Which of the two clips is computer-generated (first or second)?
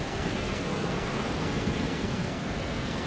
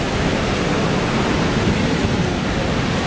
first